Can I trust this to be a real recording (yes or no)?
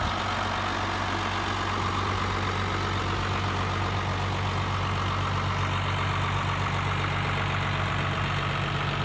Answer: yes